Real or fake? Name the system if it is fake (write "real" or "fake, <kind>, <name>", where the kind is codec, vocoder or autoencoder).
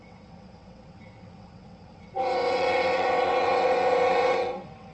fake, vocoder, WaveNeXt